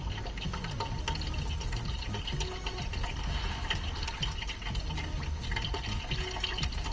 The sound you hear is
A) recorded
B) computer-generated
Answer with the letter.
A